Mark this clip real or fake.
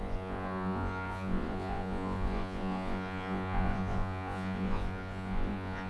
fake